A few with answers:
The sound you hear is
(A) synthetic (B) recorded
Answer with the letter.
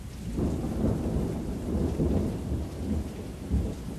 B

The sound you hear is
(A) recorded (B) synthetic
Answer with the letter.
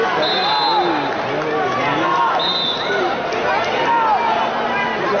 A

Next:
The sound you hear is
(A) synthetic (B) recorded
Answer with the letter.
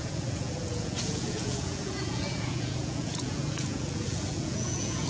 A